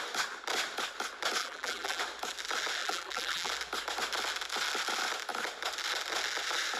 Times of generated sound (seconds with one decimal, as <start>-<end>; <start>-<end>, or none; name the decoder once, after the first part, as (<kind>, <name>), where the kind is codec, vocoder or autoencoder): 1.4-2.0 (vocoder, BigVGAN v2); 2.8-3.5